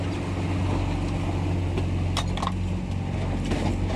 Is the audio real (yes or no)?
yes